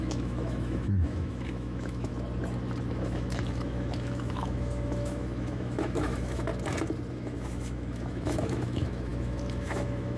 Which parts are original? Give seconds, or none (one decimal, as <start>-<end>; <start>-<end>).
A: 2.1-2.9; 6.5-7.1

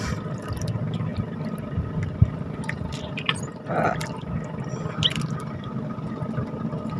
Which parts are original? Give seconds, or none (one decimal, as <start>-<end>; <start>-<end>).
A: 0.0-7.0

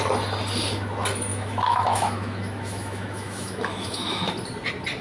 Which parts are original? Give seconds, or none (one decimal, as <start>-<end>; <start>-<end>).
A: 0.0-1.3; 4.3-5.0

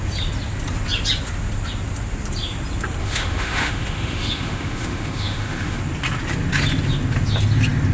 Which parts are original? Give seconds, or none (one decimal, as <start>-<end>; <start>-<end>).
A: 0.0-3.0; 5.8-7.9

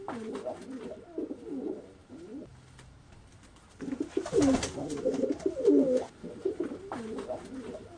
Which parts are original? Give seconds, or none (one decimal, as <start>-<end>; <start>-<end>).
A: 0.0-8.0

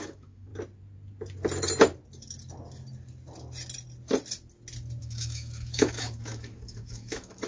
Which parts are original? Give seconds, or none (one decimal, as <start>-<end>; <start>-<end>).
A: 0.5-5.0